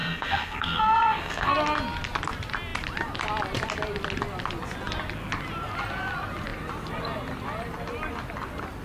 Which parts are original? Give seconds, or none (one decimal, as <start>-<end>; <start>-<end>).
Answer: 1.5-8.8